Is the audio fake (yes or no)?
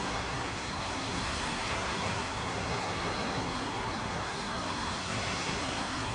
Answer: yes